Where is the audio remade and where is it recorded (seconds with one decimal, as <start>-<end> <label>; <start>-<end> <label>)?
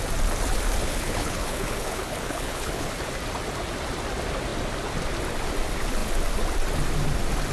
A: 0.0-0.8 recorded; 0.8-2.9 remade; 2.9-7.5 recorded